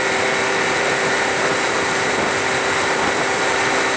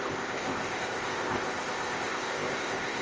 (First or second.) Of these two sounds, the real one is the first